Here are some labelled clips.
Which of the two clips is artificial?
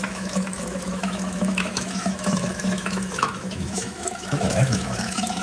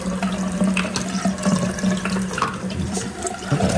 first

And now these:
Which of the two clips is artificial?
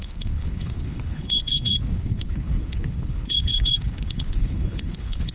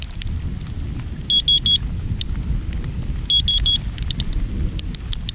first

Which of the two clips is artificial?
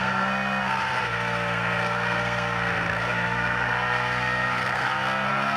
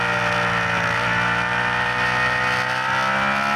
first